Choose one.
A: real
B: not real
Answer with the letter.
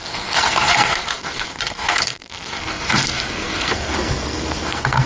B